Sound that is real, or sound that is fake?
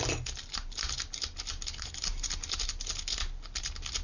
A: real